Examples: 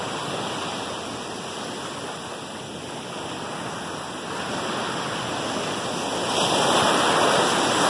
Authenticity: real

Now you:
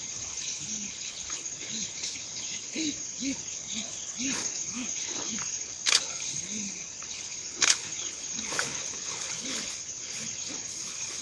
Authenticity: fake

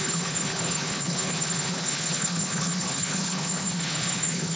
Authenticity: fake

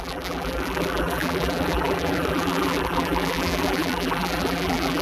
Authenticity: fake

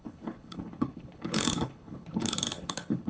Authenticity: fake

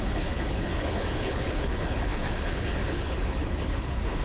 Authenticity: fake